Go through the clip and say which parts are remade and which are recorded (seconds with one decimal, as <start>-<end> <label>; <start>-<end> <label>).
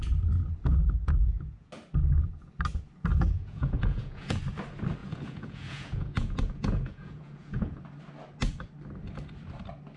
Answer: 0.0-0.7 recorded; 0.7-1.7 remade; 1.7-3.1 recorded; 3.1-4.4 remade; 4.4-5.0 recorded; 5.0-7.8 remade; 7.8-10.0 recorded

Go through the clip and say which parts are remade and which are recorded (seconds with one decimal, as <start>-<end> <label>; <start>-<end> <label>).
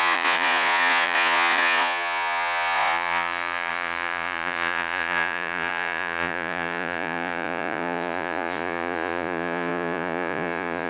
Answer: 0.0-10.9 remade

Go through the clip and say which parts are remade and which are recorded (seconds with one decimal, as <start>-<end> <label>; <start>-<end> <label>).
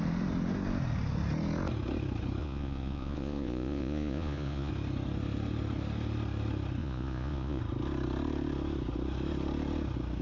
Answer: 0.0-2.4 recorded; 2.4-4.7 remade; 4.7-6.8 recorded; 6.8-7.6 remade; 7.6-10.2 recorded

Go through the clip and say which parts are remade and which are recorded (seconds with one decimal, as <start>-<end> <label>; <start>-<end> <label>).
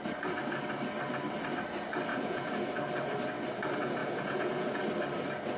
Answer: 0.0-2.1 recorded; 2.1-2.7 remade; 2.7-4.0 recorded; 4.0-4.7 remade; 4.7-5.6 recorded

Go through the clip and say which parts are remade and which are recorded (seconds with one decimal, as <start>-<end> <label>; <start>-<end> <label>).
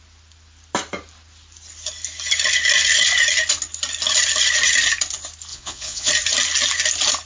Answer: 0.0-5.5 recorded; 5.5-6.1 remade; 6.1-7.3 recorded